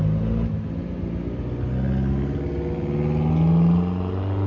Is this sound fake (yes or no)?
no